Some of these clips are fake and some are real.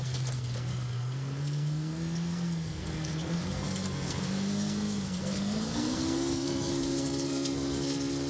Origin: fake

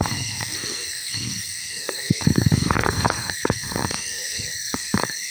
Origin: fake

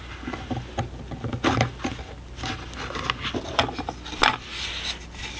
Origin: real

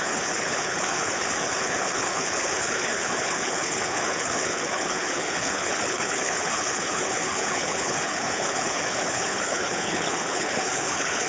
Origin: fake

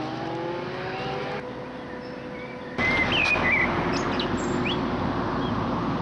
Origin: real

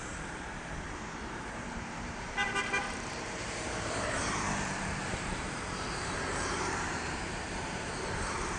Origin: fake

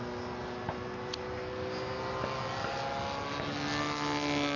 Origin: real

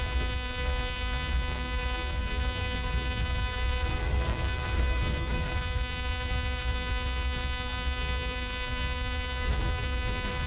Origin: fake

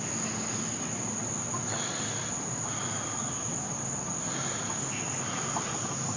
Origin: real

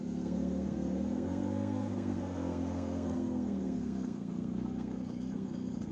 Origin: fake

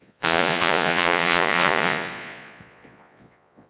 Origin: fake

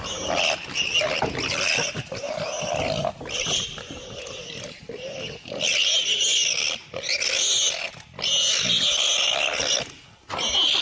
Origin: real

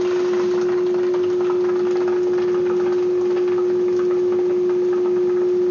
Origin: real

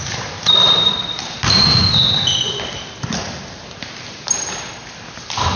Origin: fake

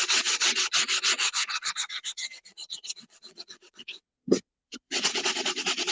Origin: fake